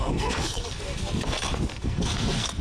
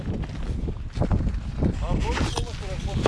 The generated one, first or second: first